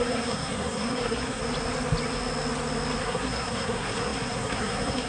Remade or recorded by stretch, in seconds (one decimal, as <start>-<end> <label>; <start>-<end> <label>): 0.0-1.4 remade; 1.4-3.0 recorded; 3.0-5.1 remade